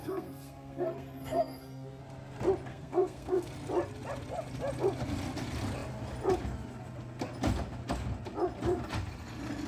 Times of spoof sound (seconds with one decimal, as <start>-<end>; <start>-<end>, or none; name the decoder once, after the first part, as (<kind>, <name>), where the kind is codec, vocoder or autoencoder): 0.0-2.0 (codec, SNAC); 2.7-3.5